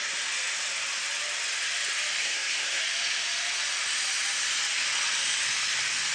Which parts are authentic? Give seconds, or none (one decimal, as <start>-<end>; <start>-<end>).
0.0-2.2; 2.8-6.1